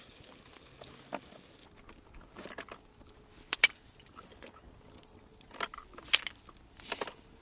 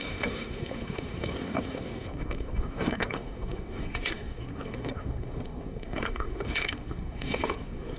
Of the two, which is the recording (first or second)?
first